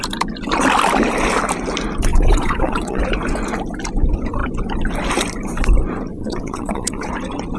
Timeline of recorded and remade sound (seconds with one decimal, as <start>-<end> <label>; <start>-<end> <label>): 0.0-2.1 recorded; 2.1-3.0 remade; 3.0-6.1 recorded; 6.1-7.1 remade; 7.1-7.6 recorded